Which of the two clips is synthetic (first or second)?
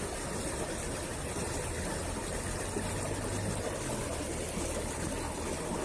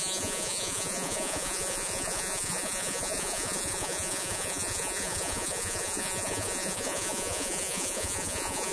second